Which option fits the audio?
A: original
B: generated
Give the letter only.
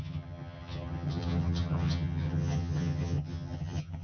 B